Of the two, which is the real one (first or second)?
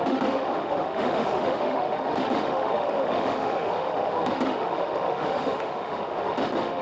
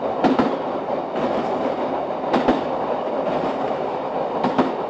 second